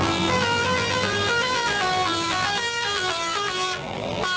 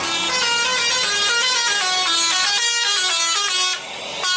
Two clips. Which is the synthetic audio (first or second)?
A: first